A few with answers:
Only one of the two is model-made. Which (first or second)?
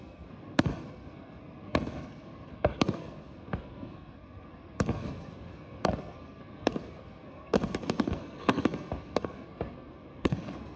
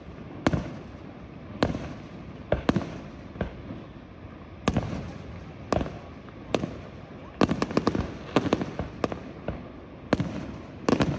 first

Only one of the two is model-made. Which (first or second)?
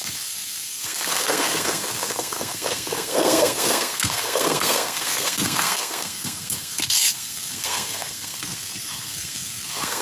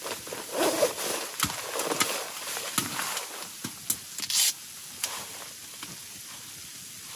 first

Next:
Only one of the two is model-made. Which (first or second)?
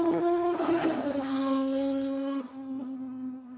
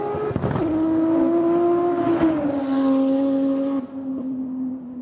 first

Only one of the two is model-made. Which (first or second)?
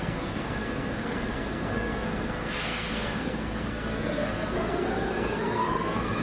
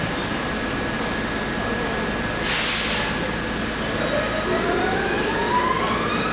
first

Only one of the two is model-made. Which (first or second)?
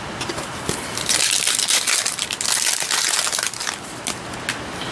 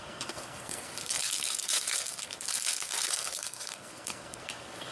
second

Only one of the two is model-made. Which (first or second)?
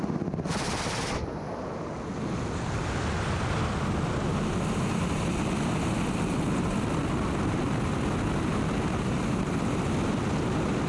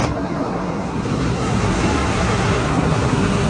second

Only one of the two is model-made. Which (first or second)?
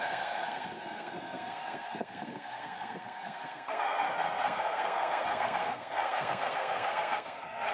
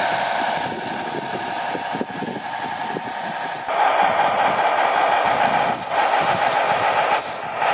first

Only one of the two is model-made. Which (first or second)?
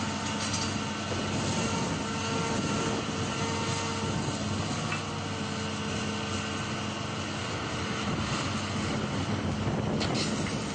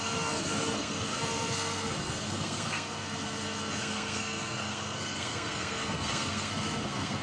second